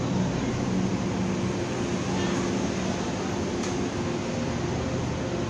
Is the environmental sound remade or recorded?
recorded